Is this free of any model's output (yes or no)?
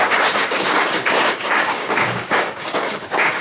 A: no